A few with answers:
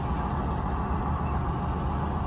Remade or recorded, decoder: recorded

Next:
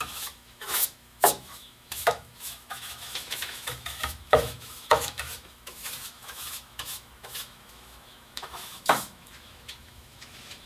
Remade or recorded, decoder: remade, autoencoder, DAC-VAE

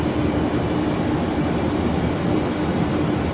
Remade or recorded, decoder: recorded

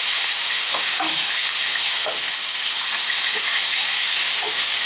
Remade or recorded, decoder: remade, autoencoder, DAC-VAE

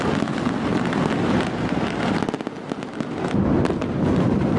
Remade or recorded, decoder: recorded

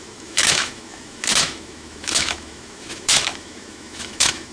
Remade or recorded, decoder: remade, autoencoder, DAC-VAE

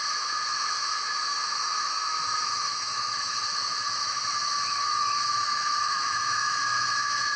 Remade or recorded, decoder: remade, autoencoder, DAC-VAE